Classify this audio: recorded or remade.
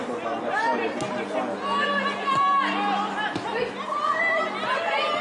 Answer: recorded